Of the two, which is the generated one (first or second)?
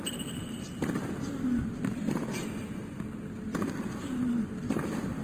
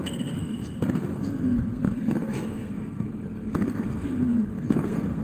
second